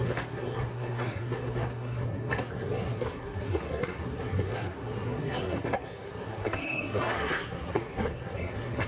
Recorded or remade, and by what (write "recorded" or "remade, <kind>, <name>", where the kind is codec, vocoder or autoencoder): remade, codec, SNAC